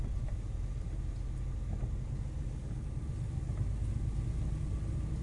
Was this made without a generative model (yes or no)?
yes